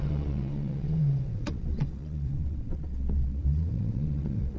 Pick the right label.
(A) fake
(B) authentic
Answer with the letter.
A